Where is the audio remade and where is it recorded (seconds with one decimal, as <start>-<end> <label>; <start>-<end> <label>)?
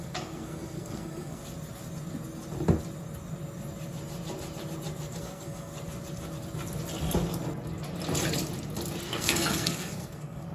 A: 0.0-1.4 remade; 1.4-5.2 recorded; 5.2-5.7 remade; 5.7-9.0 recorded; 9.0-10.5 remade